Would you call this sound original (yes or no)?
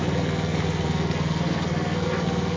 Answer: no